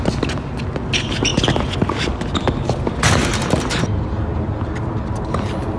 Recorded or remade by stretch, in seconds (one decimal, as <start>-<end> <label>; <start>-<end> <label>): 0.0-5.8 recorded